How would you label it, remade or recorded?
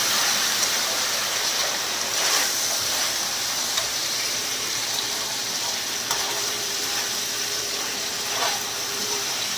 remade